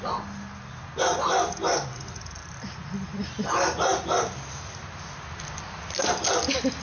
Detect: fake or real real